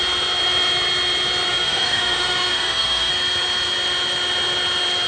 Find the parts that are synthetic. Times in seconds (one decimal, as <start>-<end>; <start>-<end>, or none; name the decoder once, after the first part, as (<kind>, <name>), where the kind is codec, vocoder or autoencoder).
1.5-3.1 (autoencoder, DAC-VAE)